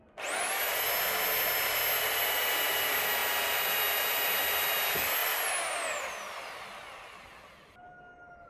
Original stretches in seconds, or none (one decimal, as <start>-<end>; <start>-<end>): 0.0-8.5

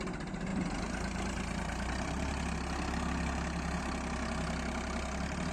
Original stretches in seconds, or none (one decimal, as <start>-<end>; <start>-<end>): 0.0-5.5

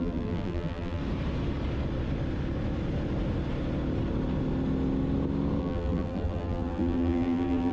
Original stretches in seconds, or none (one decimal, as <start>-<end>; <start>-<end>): 1.0-5.6